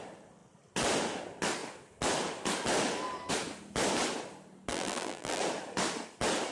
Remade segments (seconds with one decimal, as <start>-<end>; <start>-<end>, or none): 4.7-5.4